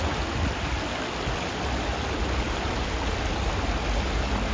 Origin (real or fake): real